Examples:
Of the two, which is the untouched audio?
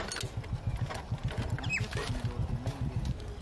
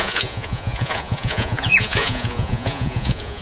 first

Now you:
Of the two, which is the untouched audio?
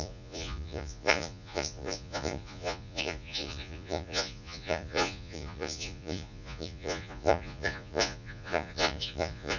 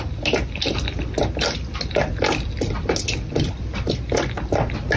second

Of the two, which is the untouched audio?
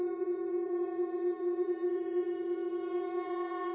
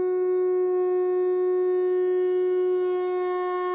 second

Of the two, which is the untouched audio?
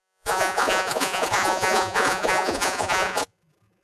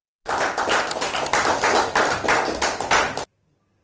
second